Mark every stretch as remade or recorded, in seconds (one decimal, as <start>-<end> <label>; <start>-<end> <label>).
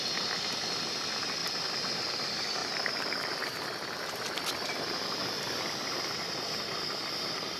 0.0-2.6 recorded; 2.6-3.4 remade; 3.4-7.6 recorded